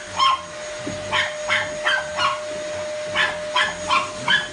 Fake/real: real